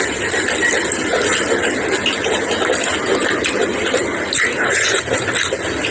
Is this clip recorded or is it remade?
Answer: recorded